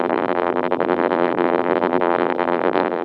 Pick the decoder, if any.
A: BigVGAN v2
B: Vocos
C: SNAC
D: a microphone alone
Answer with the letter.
A